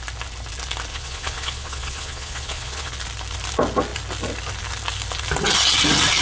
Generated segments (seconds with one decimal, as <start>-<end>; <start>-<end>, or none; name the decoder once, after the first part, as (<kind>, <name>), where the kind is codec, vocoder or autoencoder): 0.9-2.9 (vocoder, Vocos)